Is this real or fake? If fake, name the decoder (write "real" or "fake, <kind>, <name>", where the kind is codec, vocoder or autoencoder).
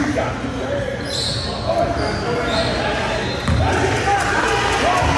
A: real